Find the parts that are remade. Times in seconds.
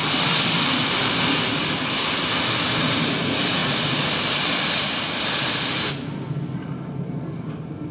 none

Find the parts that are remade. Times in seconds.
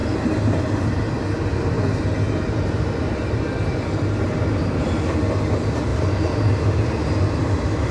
5.9-6.8 (vocoder, BigVGAN v2)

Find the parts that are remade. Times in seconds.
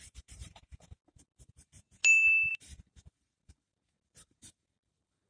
0.0-2.0 (vocoder, BigVGAN v2); 2.5-5.3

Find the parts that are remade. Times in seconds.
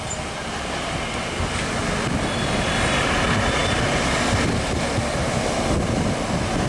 none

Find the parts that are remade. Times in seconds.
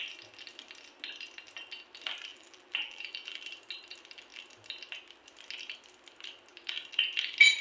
2.3-3.4 (vocoder, BigVGAN v2)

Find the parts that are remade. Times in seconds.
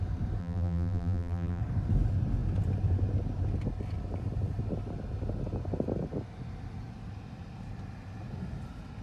0.4-1.6 (vocoder, BigVGAN v2)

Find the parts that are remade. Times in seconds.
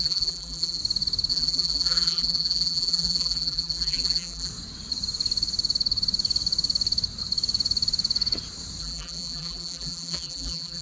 0.0-0.8 (vocoder, BigVGAN v2); 1.3-4.5; 8.8-10.8